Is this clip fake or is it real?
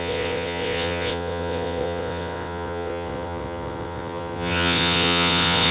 fake